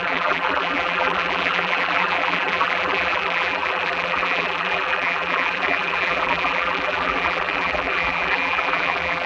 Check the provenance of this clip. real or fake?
fake